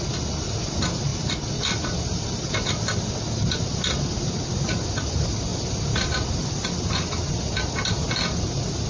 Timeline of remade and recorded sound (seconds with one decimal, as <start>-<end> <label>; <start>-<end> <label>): 0.0-8.9 recorded